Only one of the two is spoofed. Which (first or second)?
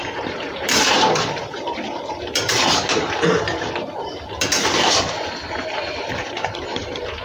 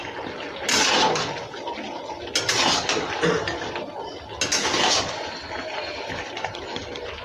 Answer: first